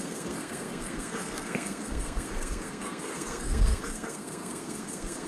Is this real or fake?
fake